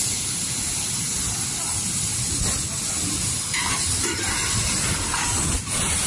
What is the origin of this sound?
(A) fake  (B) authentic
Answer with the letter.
B